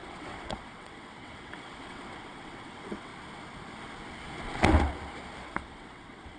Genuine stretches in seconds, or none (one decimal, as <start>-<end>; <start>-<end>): 3.1-5.4